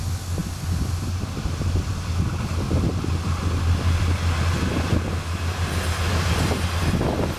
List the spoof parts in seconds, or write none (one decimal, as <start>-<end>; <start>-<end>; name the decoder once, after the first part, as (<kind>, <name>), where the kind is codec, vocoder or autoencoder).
none